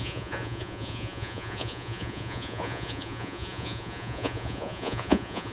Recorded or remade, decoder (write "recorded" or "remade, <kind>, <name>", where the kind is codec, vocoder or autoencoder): remade, vocoder, Vocos